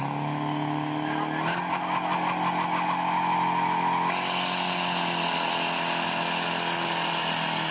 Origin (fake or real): real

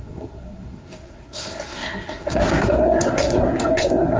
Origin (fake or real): fake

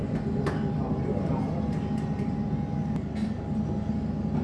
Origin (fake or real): real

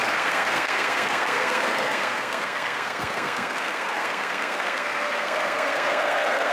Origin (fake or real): fake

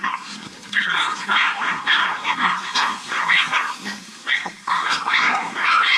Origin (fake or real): fake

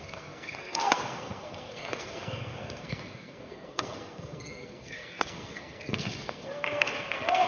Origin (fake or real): fake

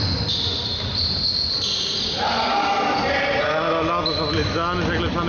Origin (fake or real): real